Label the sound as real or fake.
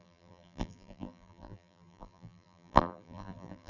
fake